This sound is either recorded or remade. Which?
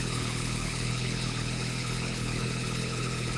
remade